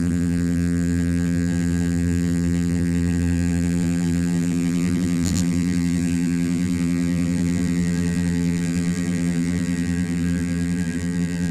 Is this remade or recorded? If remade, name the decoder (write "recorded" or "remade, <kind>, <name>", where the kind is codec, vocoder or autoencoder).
remade, vocoder, BigVGAN v2